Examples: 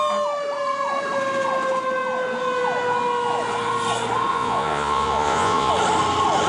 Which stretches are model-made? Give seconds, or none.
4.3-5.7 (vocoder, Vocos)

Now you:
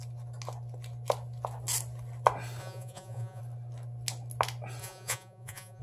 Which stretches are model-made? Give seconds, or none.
2.6-3.4 (vocoder, Vocos); 4.8-5.8

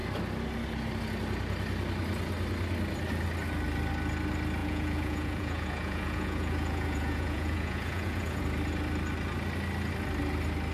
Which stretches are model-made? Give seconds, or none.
4.6-8.4 (vocoder, Vocos)

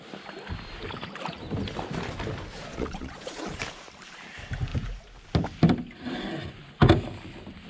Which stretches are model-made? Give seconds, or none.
2.7-3.6 (vocoder, Vocos)

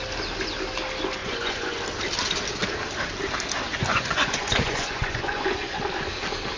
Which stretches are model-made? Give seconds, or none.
1.2-1.8 (vocoder, Vocos); 3.9-5.8

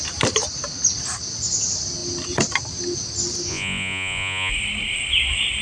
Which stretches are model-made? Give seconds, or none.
3.5-4.5 (vocoder, Vocos)

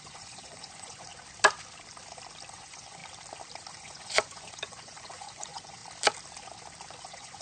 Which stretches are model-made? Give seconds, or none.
0.0-1.1 (vocoder, Vocos); 2.5-3.0; 3.7-5.8; 7.0-7.4

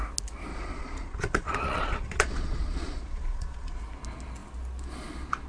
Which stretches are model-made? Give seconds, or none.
0.5-3.8 (vocoder, Vocos)